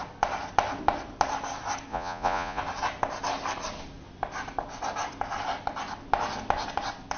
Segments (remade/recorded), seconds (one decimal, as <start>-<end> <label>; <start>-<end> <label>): 0.0-1.9 recorded; 1.9-2.6 remade; 2.6-7.2 recorded